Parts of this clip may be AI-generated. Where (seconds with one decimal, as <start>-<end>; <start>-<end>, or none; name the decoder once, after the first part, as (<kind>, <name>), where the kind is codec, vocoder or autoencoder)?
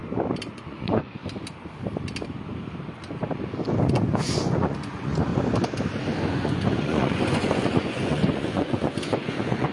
0.5-1.2 (vocoder, Vocos); 3.9-5.3; 6.3-9.7